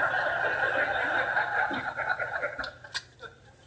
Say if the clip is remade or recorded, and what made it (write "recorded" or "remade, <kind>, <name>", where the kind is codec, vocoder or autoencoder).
recorded